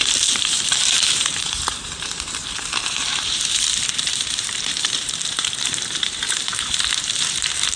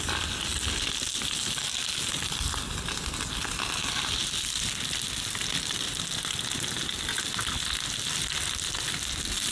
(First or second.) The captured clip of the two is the second